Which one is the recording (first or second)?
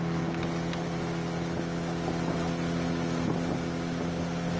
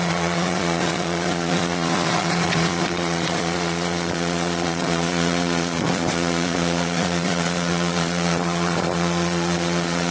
first